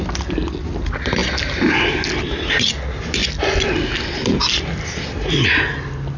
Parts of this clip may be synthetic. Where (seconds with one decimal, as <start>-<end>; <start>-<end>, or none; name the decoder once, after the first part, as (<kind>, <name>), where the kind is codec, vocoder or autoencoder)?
none